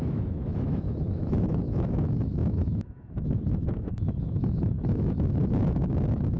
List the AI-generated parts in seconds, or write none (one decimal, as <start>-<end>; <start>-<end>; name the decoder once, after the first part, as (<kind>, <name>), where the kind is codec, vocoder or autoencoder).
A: 0.0-6.4 (autoencoder, DAC-VAE)